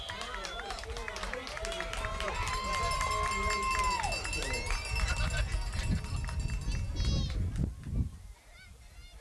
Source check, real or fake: real